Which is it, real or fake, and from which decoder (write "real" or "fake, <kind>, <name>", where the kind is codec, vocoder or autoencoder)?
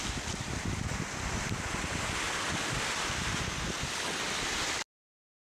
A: real